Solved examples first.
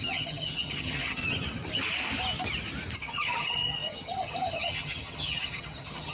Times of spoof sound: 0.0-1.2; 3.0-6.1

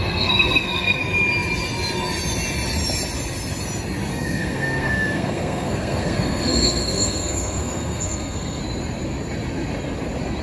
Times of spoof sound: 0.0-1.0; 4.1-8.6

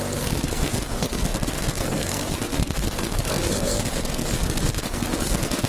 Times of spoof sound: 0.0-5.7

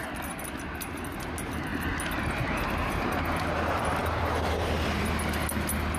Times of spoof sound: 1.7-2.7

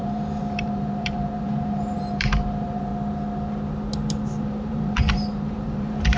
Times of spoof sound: 0.0-2.9; 4.4-6.2